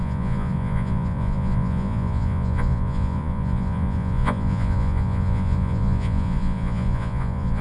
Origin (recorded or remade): remade